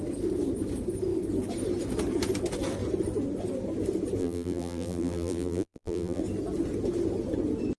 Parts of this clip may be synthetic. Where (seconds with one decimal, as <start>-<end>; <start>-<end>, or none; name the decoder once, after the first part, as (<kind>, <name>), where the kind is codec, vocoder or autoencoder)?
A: 4.2-6.2 (vocoder, BigVGAN v2)